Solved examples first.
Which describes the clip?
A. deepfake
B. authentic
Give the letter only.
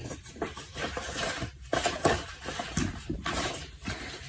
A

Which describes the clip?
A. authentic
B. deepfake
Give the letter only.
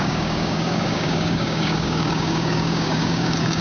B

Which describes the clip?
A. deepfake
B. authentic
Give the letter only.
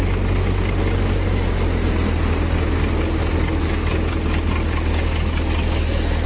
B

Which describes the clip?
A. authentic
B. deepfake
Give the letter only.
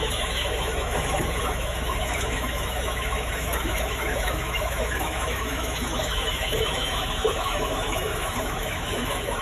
B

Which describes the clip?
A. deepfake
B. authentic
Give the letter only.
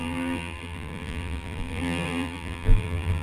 A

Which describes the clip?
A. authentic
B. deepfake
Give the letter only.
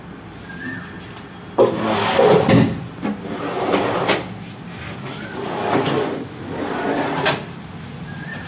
A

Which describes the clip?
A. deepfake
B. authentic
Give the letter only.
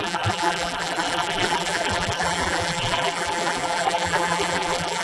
A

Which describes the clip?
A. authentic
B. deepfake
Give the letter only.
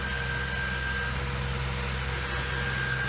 A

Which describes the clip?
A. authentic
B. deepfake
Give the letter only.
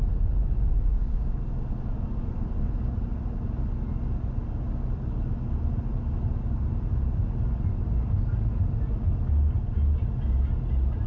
A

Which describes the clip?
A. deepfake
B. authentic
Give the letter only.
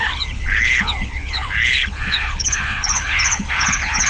A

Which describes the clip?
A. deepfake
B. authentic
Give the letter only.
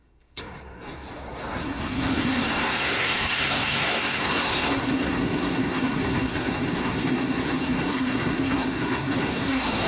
A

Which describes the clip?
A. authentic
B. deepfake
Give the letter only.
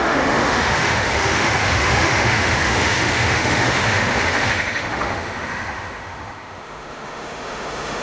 B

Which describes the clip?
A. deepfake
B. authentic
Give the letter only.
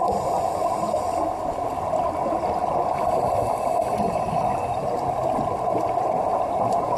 B